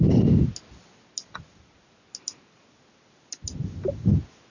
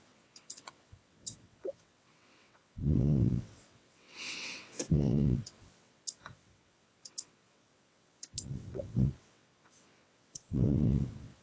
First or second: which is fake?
second